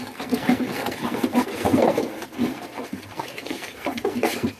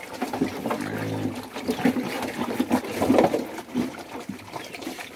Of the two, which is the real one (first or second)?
second